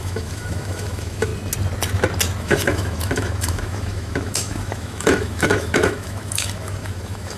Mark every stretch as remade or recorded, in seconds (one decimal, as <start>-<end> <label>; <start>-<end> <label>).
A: 0.0-1.3 remade; 1.3-2.4 recorded; 2.4-7.4 remade